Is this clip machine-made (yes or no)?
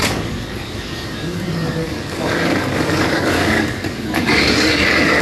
yes